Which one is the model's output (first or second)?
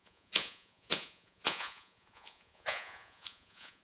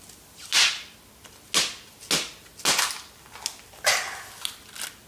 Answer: first